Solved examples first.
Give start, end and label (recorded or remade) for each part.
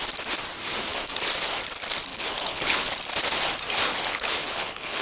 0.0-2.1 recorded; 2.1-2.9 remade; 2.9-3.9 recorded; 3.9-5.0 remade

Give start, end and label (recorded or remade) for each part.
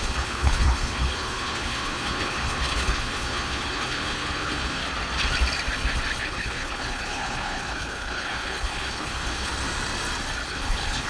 0.0-4.8 remade; 4.8-6.2 recorded; 6.2-9.5 remade; 9.5-10.5 recorded; 10.5-11.1 remade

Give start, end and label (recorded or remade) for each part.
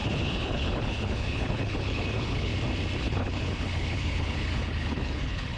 0.0-2.5 remade; 2.5-3.0 recorded; 3.0-5.6 remade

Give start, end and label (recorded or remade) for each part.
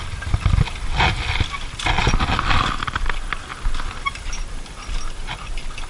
0.0-5.9 recorded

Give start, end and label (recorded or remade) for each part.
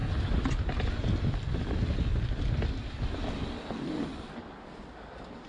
0.0-5.5 recorded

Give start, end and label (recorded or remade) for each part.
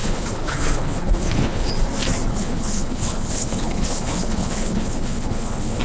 0.0-1.7 remade; 1.7-2.3 recorded; 2.3-5.8 remade